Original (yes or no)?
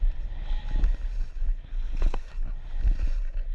yes